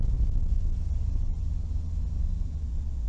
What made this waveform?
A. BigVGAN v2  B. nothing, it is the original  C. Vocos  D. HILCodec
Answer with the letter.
C